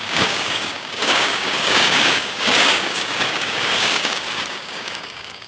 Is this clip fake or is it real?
fake